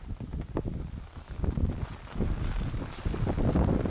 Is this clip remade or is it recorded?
remade